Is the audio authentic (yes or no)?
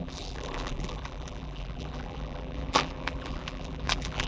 no